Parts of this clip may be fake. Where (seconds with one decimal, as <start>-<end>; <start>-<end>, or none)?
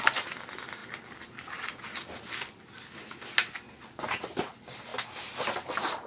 none